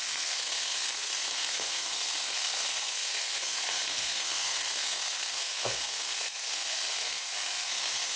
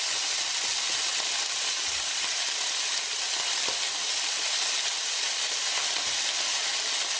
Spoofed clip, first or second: first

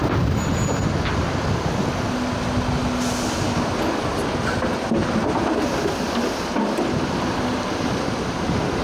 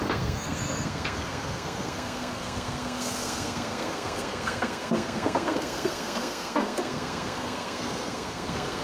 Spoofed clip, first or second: second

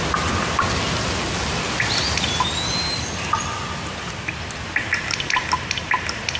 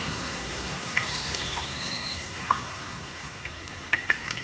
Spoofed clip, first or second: second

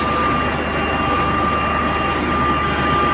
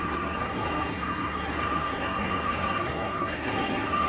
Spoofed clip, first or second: second